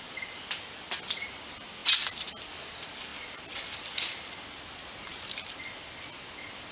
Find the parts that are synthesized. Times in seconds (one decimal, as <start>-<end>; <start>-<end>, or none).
none